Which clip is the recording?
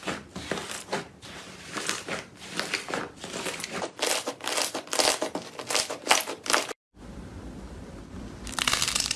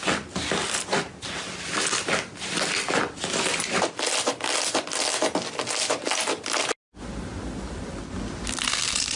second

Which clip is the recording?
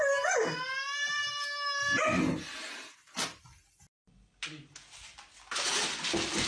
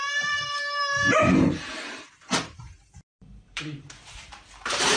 first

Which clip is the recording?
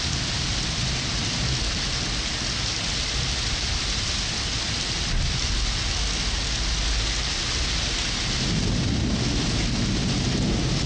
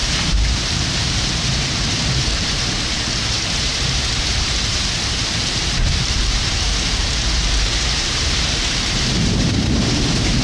first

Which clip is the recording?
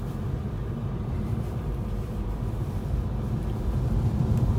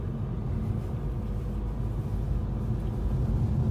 second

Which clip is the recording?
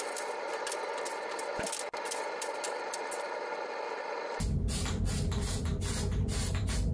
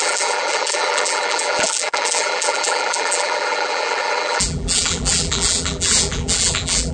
first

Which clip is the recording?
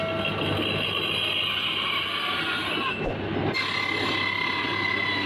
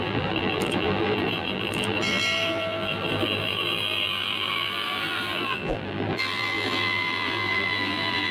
first